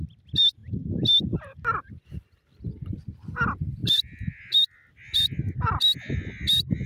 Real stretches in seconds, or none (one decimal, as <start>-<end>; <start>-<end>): 0.0-6.9